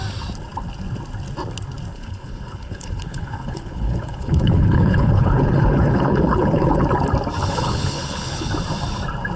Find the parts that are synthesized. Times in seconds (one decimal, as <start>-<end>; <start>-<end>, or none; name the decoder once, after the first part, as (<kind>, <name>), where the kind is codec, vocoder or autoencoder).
1.9-6.8 (codec, HILCodec); 7.4-8.5